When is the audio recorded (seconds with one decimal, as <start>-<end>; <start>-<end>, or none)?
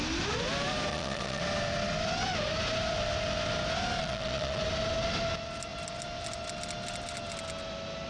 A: 0.0-0.9; 1.4-4.0; 4.6-8.1